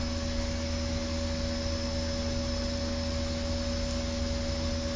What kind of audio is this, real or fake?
real